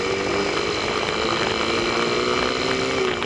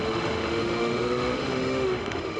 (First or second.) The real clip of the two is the first